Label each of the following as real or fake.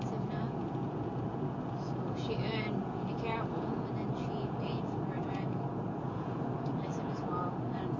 fake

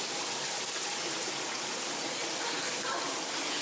real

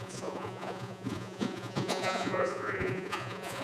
fake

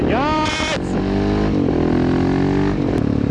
real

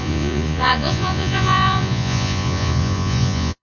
fake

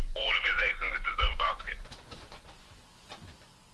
fake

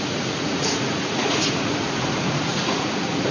fake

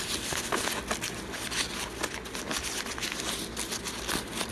real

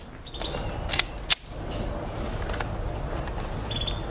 real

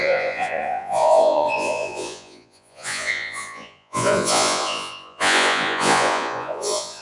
fake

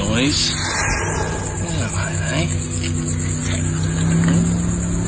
real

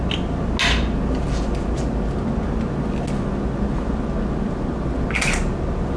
real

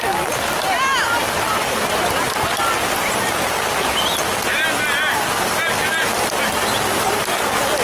real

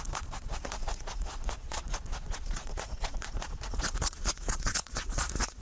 fake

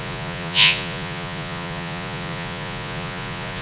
fake